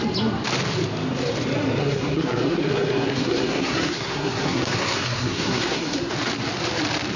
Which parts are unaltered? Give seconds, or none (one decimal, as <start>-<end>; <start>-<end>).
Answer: 0.0-1.8; 6.1-7.2